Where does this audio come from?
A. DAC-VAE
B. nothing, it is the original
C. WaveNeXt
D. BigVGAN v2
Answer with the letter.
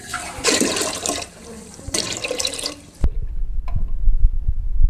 D